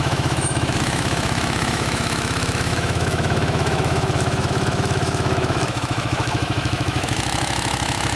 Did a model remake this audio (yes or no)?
yes